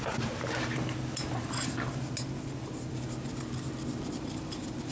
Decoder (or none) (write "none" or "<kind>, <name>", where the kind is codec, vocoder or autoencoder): none